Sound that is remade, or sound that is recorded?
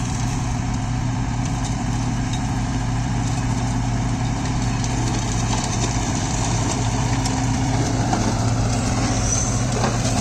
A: remade